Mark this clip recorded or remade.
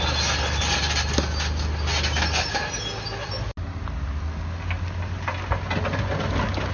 recorded